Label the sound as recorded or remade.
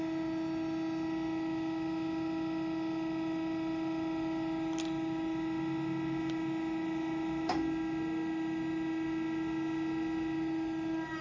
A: recorded